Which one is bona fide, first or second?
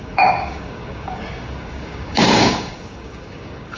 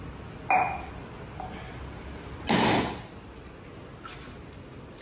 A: second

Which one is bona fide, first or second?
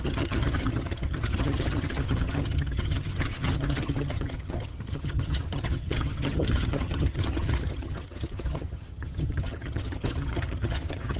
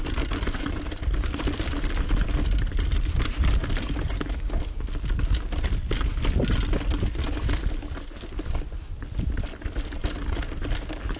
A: second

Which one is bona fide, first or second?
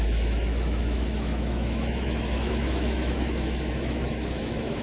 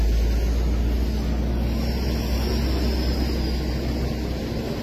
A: second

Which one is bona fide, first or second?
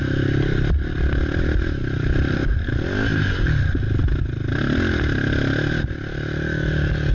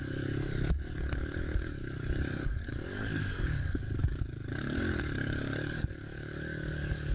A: first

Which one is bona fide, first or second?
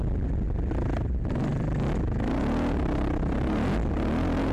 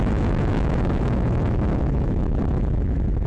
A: first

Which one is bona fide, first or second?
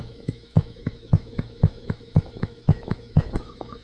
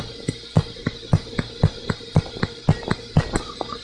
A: second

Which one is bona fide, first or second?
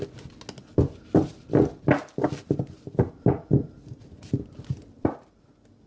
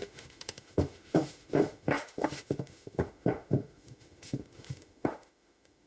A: first